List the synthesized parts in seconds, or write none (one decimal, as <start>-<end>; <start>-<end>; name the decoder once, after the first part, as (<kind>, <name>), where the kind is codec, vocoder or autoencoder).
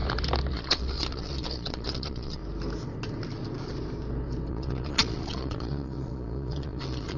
0.5-2.4 (vocoder, Vocos); 4.5-7.2